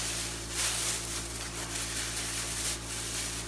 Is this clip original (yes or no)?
yes